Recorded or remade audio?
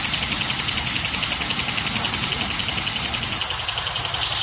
recorded